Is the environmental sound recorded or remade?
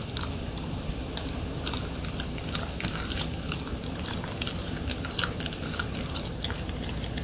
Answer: recorded